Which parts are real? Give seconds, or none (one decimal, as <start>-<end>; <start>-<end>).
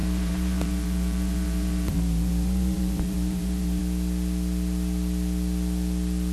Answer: 3.8-6.3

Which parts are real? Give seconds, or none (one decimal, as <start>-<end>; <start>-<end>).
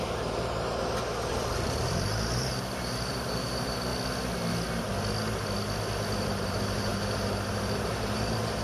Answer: 3.9-6.2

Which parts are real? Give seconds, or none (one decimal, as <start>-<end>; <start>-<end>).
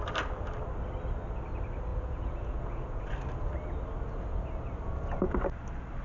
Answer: 0.0-1.9; 3.1-6.0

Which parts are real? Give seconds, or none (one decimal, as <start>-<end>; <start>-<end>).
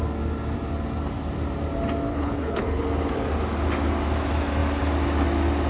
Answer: 0.0-2.1; 2.8-5.7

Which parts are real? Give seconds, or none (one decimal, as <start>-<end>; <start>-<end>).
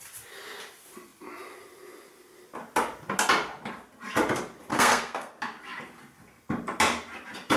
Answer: 0.0-4.7; 5.3-7.6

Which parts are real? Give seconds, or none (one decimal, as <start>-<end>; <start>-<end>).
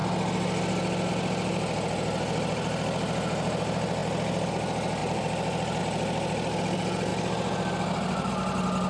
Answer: 0.0-5.0; 5.8-8.9